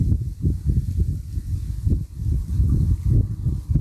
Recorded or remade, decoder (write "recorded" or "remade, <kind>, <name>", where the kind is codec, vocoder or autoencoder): recorded